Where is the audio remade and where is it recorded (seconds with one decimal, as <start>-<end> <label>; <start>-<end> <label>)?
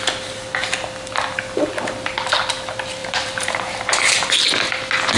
0.0-3.0 recorded; 3.0-4.4 remade; 4.4-5.2 recorded